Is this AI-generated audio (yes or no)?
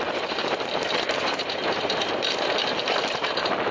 yes